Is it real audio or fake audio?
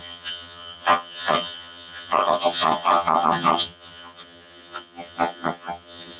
fake